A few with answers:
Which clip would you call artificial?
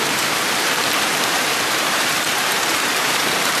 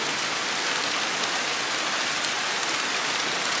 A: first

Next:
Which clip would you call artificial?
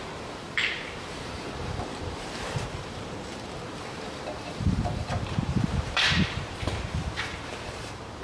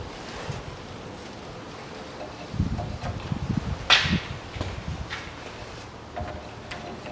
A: first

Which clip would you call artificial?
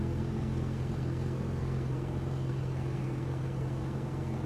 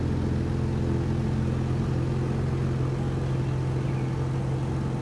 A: first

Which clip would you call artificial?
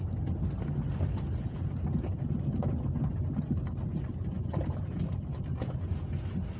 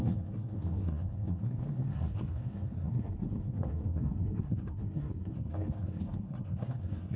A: second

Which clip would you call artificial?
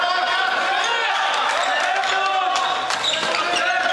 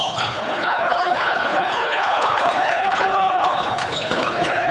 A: second